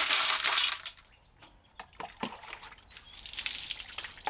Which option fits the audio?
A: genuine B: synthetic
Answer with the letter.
A